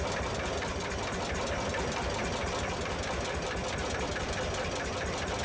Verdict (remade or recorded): recorded